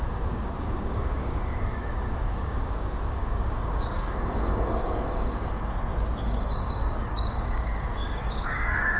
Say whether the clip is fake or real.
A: fake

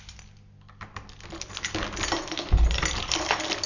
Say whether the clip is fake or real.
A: real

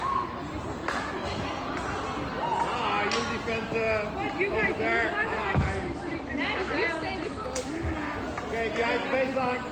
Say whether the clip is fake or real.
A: real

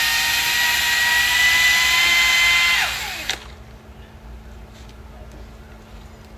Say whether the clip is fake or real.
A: real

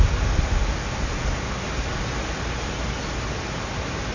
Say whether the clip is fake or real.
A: real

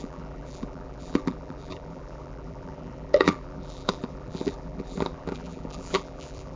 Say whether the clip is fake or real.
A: fake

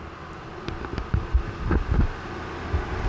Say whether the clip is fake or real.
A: real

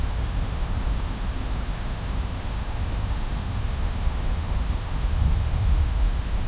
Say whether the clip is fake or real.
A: fake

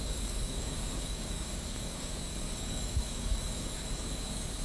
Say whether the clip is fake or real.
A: fake